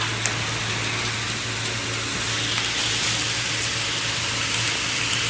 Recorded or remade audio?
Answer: recorded